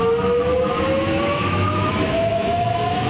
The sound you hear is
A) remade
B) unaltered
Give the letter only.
A